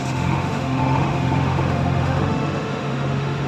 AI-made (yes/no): yes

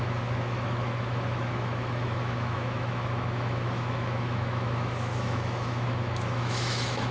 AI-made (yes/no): yes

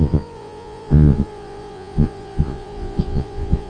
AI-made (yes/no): yes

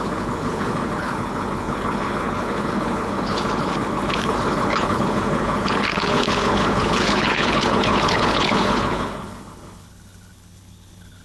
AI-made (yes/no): yes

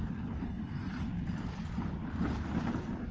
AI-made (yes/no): no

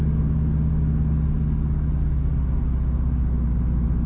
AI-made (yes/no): no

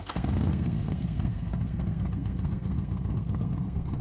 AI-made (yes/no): yes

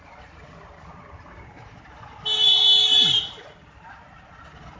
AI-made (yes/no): no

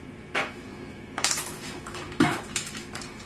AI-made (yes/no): yes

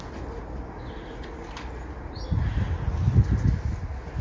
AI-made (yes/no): no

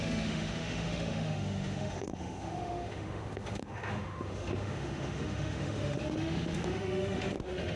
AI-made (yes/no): yes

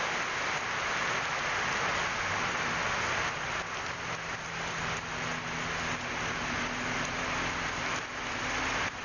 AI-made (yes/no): no